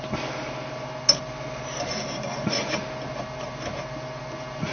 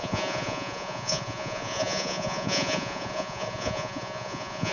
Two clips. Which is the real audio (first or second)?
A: first